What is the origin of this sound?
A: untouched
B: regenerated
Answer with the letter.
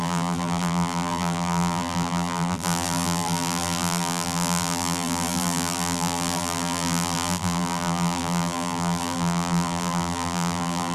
B